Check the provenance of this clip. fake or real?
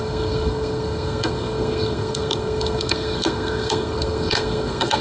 fake